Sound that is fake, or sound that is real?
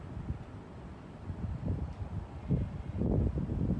real